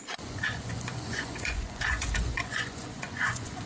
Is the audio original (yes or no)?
no